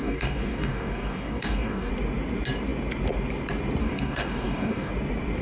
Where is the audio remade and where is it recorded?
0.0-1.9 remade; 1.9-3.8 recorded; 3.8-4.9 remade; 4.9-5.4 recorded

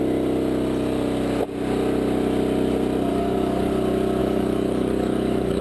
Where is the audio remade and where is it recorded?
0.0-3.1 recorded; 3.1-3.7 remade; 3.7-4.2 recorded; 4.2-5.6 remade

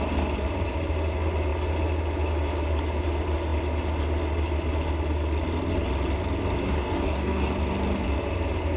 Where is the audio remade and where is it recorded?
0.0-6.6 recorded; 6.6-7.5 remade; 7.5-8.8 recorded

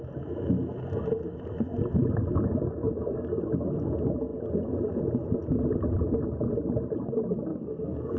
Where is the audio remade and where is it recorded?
0.0-2.3 recorded; 2.3-3.5 remade; 3.5-7.5 recorded; 7.5-8.2 remade

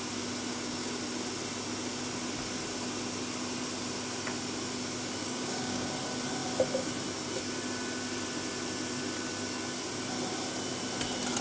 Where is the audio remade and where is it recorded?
0.0-0.5 recorded; 0.5-1.0 remade; 1.0-5.2 recorded; 5.2-5.9 remade; 5.9-11.4 recorded